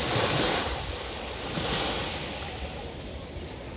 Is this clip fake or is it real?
real